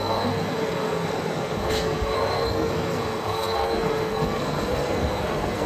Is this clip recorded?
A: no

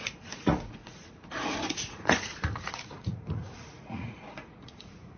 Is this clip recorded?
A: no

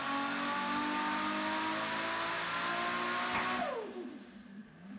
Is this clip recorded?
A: yes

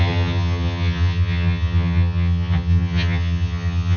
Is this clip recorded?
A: no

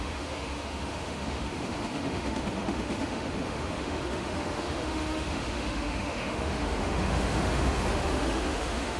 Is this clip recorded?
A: no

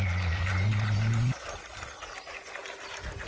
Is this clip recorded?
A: yes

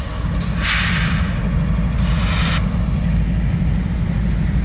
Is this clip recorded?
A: yes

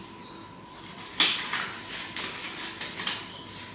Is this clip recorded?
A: yes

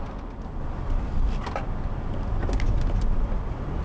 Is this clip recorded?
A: yes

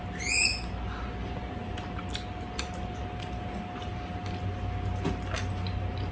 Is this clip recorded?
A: yes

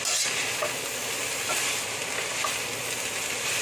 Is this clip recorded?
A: yes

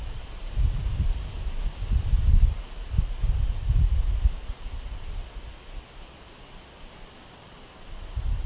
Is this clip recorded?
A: yes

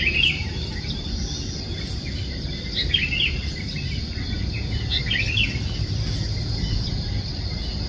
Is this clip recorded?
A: yes